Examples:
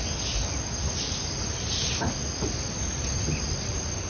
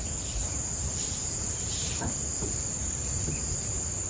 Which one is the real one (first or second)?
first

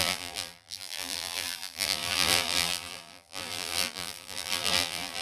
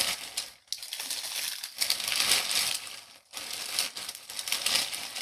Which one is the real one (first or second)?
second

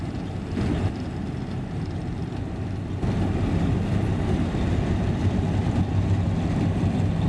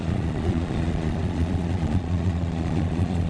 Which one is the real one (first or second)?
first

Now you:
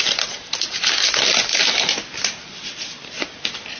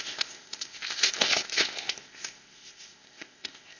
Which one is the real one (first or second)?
first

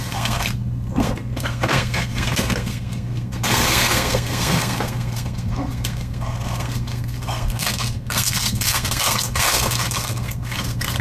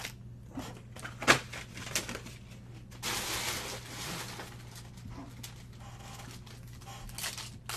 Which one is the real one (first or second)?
second